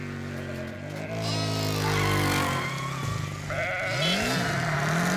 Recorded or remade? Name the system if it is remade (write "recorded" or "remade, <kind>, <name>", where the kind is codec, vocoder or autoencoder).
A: recorded